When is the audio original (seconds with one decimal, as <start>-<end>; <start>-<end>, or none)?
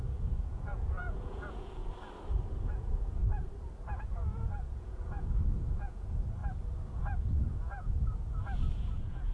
1.8-2.6; 3.2-3.9; 6.4-7.0